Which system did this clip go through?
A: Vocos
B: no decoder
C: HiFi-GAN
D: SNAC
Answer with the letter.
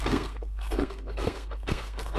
D